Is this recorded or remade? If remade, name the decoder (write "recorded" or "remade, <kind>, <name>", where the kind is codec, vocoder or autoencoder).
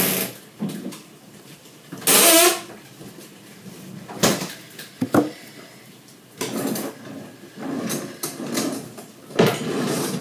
recorded